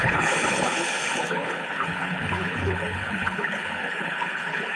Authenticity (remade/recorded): remade